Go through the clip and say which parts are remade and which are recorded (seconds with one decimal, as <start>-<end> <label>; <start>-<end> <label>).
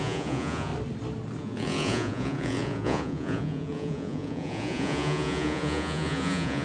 0.0-0.7 remade; 0.7-1.4 recorded; 1.4-6.6 remade